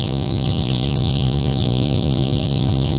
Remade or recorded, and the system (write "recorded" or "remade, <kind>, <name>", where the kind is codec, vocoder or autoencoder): remade, vocoder, Vocos